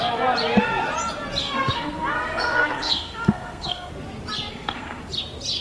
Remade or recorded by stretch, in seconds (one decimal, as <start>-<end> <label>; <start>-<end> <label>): 0.0-1.4 recorded; 1.4-3.9 remade; 3.9-4.5 recorded; 4.5-5.0 remade; 5.0-5.6 recorded